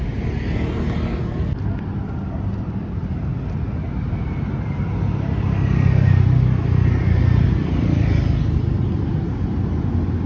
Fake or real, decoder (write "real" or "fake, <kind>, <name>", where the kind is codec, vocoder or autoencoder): real